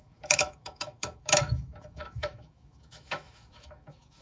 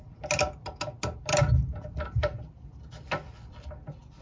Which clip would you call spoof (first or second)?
first